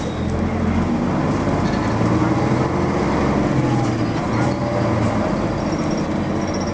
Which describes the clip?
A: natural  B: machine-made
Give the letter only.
A